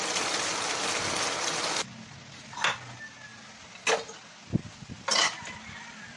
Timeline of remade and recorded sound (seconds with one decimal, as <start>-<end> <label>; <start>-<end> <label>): 0.0-6.2 recorded